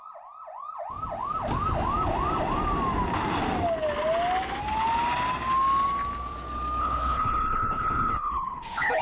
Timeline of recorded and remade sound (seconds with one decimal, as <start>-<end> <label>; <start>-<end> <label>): 0.0-6.8 recorded; 6.8-9.0 remade